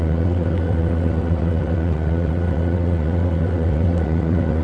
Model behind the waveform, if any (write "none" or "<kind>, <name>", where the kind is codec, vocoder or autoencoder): vocoder, WaveNeXt